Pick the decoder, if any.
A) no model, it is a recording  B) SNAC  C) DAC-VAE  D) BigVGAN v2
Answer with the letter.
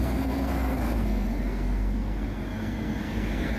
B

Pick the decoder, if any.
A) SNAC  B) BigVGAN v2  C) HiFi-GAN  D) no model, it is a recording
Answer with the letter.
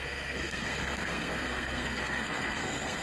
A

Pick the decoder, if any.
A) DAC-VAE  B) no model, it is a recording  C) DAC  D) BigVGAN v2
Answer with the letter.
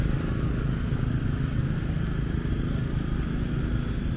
B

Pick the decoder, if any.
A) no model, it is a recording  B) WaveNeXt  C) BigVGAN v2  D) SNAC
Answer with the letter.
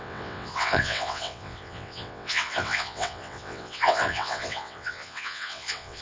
B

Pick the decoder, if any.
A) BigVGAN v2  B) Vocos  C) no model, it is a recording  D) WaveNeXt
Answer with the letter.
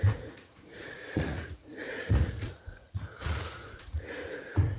B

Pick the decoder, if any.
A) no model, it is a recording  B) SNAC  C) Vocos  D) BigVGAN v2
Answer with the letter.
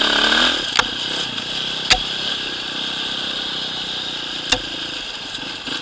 A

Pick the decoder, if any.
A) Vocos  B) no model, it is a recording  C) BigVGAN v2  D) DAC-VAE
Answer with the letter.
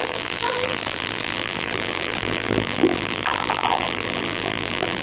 C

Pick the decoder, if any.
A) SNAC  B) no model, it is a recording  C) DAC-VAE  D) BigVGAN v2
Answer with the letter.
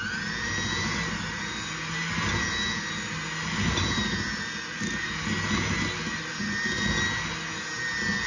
B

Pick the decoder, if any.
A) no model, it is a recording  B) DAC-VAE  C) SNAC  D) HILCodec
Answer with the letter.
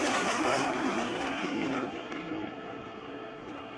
C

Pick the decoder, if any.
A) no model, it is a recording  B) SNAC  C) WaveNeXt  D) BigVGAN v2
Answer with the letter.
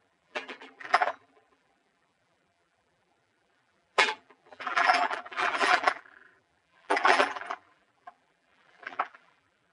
D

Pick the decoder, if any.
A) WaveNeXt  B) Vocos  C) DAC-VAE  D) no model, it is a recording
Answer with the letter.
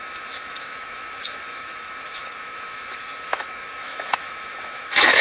C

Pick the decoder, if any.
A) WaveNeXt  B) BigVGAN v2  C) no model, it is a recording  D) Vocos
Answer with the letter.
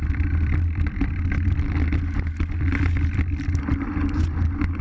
C